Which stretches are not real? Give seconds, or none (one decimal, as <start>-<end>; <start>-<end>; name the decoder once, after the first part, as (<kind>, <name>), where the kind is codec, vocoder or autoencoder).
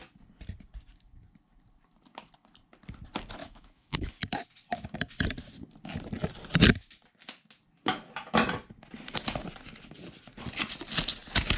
3.4-4.2 (autoencoder, DAC-VAE)